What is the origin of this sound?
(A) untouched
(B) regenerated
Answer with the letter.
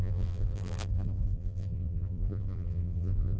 B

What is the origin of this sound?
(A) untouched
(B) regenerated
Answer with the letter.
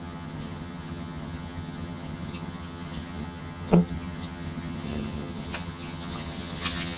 B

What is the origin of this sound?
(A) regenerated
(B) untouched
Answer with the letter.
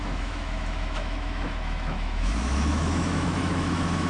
A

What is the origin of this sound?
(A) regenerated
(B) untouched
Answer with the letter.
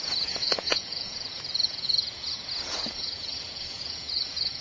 A